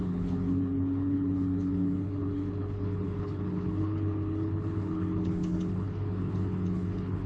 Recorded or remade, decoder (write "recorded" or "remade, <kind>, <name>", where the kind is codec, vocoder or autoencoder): remade, codec, HILCodec